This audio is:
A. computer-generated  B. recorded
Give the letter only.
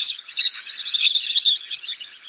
A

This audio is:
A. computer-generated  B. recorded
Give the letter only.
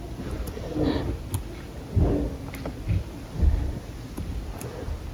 B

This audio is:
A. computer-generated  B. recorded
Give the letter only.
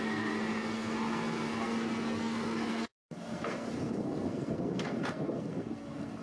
A